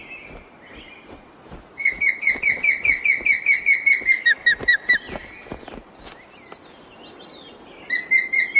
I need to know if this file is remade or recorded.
recorded